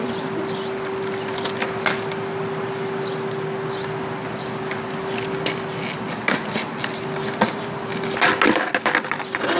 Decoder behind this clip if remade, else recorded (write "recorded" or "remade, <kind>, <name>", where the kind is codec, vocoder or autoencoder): recorded